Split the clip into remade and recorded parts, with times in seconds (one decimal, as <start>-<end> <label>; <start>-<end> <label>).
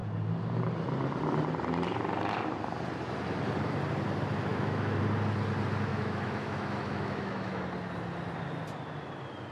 0.0-4.5 recorded; 4.5-5.0 remade; 5.0-5.9 recorded; 5.9-7.6 remade; 7.6-9.5 recorded